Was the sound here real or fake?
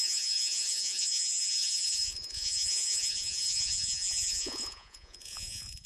fake